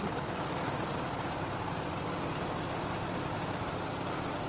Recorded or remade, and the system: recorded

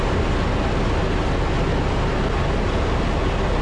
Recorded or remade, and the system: recorded